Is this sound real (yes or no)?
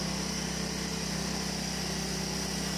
yes